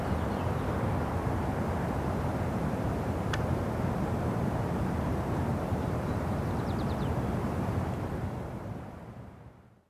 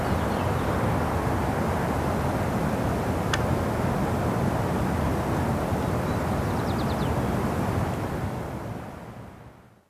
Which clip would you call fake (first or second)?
first